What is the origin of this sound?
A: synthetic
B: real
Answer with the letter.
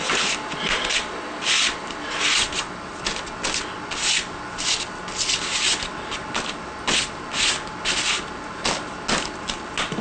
B